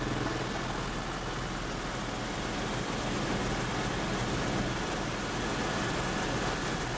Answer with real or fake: real